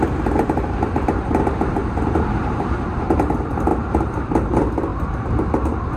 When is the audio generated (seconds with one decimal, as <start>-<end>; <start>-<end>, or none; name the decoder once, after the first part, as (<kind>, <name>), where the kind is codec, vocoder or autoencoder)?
0.0-1.8 (vocoder, BigVGAN v2); 2.5-6.0